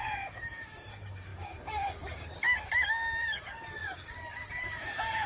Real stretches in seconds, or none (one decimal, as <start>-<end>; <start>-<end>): none